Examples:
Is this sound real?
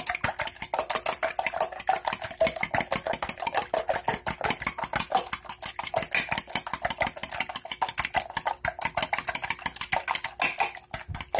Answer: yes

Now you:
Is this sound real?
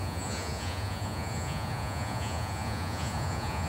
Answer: no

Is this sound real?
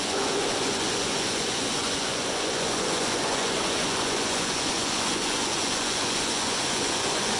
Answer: no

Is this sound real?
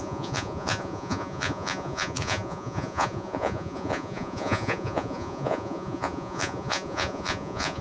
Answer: no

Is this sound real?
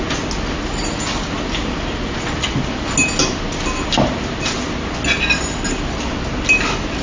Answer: yes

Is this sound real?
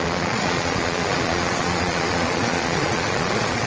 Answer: no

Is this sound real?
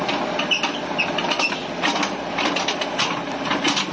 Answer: yes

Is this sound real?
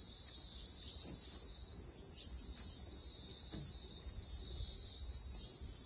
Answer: yes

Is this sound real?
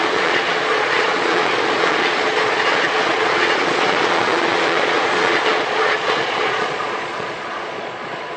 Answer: no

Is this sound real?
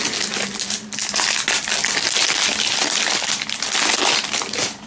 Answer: yes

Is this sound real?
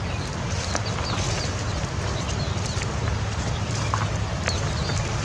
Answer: yes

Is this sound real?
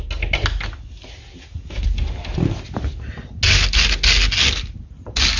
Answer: yes